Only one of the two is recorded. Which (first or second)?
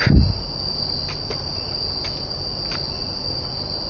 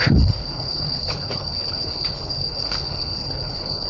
first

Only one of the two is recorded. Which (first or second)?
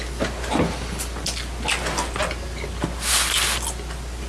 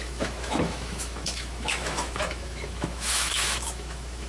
first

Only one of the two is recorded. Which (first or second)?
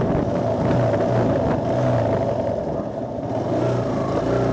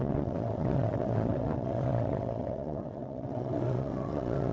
first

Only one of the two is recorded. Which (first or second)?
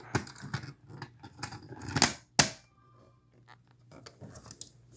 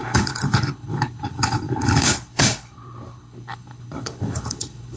first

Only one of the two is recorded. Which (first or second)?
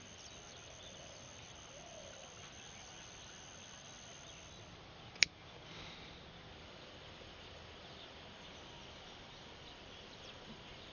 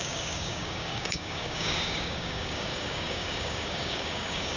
first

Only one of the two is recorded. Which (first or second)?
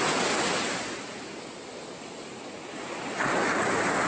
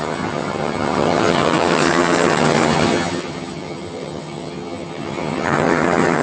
first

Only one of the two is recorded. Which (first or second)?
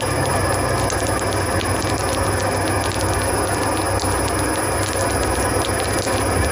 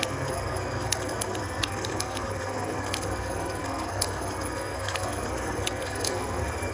first